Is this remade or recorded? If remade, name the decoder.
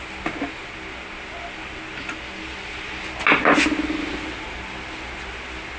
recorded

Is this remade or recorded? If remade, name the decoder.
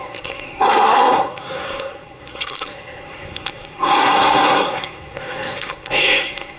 remade, codec, SNAC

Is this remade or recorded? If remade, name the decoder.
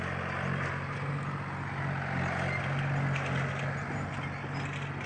recorded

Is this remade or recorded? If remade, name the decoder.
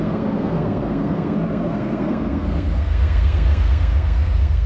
remade, codec, SNAC